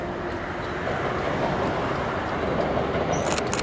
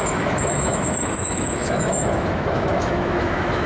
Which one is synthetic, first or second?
second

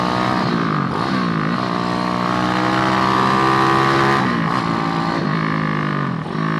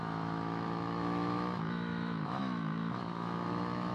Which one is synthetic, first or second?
second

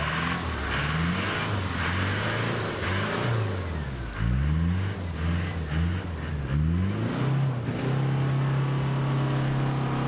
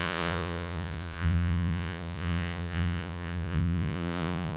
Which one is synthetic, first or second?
second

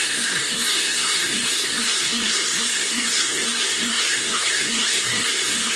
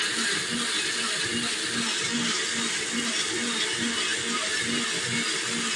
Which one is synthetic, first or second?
first